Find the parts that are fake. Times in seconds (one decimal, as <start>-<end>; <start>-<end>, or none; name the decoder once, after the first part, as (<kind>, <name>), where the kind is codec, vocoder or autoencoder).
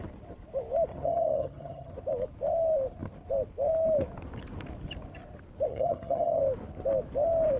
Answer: 0.9-1.9 (vocoder, HiFi-GAN); 5.7-6.4